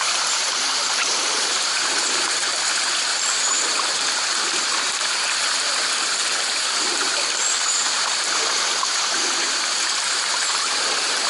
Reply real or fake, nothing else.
fake